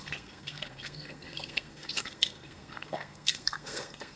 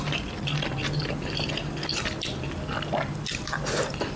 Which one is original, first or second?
second